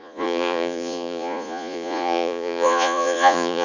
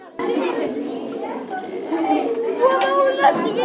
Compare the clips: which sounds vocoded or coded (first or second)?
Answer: first